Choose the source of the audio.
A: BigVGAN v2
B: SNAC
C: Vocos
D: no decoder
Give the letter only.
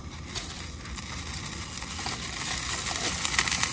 D